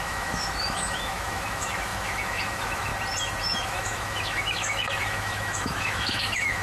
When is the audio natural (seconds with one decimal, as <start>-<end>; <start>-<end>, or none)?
2.9-3.4